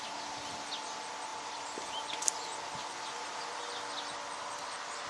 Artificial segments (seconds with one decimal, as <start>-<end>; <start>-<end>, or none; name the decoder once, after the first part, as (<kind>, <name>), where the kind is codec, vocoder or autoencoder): none

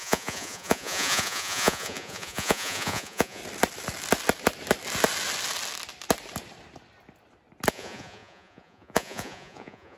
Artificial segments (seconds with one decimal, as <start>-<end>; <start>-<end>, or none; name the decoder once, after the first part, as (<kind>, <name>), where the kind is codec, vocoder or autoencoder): 0.0-3.4 (vocoder, Vocos); 7.7-10.0

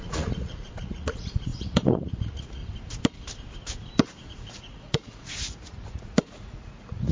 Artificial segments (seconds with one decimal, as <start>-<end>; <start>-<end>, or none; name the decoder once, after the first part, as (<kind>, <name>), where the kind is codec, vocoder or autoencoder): 0.0-2.6 (vocoder, Vocos); 4.3-7.1

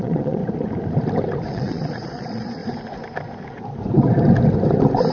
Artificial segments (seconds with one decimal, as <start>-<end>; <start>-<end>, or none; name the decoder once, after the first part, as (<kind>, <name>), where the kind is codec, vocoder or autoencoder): 0.0-0.4 (vocoder, Vocos); 1.5-2.6

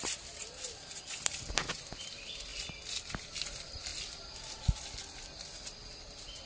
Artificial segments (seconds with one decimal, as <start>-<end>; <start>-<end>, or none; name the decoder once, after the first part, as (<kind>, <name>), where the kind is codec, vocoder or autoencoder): none

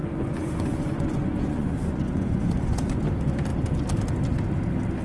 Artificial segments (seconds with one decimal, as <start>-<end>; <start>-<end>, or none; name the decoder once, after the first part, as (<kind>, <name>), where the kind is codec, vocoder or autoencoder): 0.0-3.0 (vocoder, Vocos)

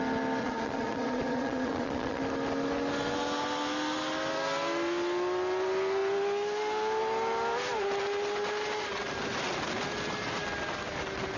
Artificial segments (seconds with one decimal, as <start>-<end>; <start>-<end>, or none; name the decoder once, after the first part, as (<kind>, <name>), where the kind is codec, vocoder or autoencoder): 0.4-2.2 (vocoder, Vocos)

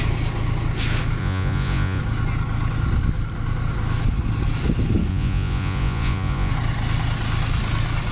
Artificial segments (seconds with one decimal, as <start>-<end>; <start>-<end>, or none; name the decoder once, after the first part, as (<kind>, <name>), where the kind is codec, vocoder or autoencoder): 1.2-2.0 (vocoder, Vocos); 5.1-6.5